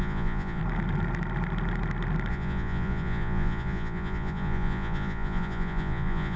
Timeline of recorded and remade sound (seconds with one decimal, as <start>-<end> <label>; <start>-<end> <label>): 0.0-0.6 remade; 0.6-2.3 recorded; 2.3-6.4 remade